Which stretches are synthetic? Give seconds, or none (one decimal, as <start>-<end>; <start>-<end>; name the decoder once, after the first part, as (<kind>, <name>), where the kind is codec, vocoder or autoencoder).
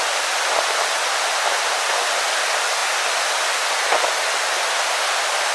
none